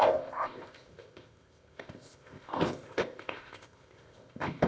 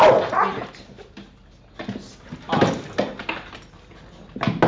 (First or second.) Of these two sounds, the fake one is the first